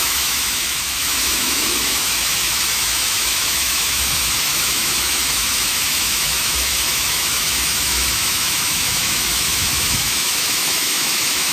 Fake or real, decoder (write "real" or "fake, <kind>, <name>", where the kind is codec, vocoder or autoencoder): fake, autoencoder, DAC-VAE